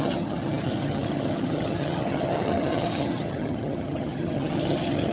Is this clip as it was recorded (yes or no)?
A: no